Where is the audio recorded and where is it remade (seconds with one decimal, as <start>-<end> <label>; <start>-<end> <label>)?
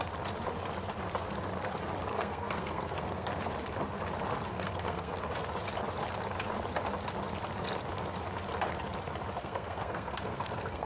0.0-2.1 recorded; 2.1-3.4 remade; 3.4-4.5 recorded; 4.5-5.3 remade; 5.3-9.4 recorded; 9.4-10.9 remade